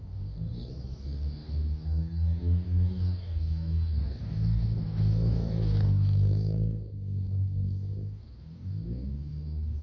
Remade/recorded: remade